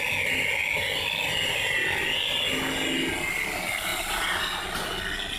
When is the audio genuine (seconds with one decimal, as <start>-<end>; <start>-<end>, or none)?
0.0-3.9; 4.4-5.4